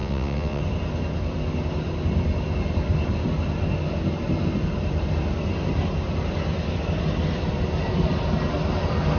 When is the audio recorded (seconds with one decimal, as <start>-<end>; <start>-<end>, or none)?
0.6-9.2